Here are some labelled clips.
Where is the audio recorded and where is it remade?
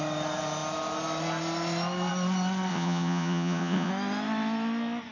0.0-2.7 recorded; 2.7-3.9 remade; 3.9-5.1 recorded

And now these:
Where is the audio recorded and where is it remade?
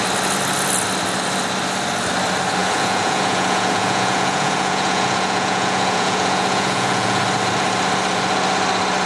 0.0-2.6 recorded; 2.6-7.2 remade; 7.2-9.1 recorded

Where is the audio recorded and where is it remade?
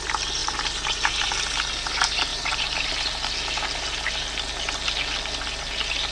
0.0-0.4 recorded; 0.4-1.3 remade; 1.3-2.3 recorded; 2.3-2.9 remade; 2.9-6.1 recorded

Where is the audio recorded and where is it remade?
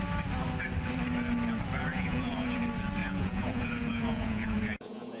0.0-1.9 recorded; 1.9-2.6 remade; 2.6-3.0 recorded; 3.0-5.2 remade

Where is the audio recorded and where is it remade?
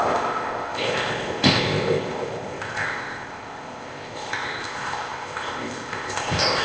0.0-6.6 remade